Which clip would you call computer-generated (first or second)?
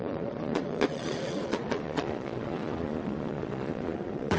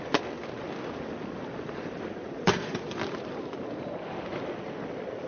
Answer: first